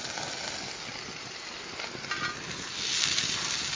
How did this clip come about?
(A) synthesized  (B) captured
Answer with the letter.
B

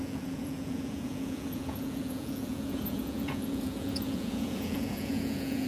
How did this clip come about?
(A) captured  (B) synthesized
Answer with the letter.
B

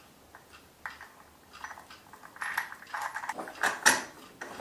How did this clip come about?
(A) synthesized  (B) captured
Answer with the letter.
B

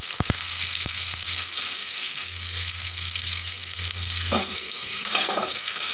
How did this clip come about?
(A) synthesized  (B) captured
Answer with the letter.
A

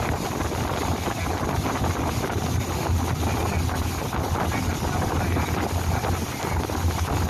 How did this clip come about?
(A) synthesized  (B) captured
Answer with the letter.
B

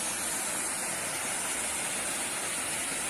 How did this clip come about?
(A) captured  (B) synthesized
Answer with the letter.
A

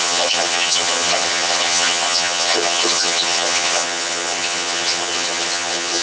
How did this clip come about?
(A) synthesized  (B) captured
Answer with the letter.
A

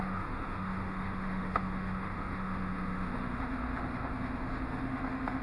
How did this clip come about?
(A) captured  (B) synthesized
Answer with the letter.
B